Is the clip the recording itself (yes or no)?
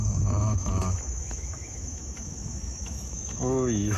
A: no